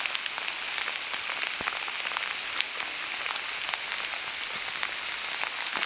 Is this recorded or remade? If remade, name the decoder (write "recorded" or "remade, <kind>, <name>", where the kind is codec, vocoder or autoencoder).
recorded